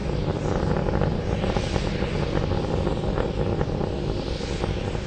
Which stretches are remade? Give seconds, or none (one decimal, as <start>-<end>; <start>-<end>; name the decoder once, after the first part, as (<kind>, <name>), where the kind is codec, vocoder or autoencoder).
none